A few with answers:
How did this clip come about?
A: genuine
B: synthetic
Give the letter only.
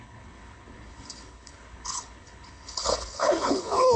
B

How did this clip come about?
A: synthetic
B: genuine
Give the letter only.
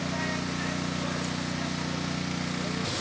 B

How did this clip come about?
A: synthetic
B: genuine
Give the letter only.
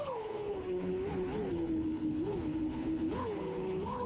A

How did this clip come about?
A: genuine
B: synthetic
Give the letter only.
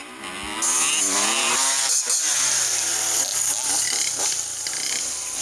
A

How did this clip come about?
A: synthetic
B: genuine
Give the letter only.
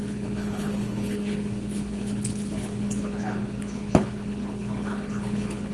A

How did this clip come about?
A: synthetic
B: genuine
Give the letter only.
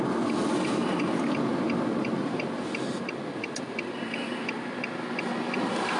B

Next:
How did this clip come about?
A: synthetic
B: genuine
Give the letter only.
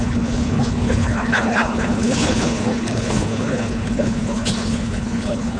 A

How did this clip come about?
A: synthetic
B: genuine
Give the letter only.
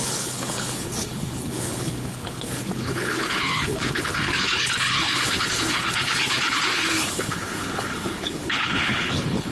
A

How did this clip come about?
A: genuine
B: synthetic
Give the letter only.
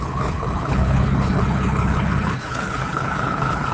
B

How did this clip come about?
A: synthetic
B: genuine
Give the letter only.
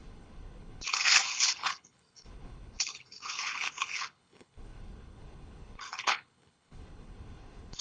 A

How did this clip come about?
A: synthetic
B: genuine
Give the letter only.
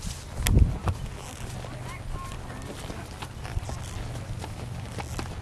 B